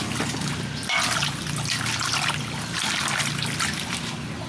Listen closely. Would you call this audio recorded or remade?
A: recorded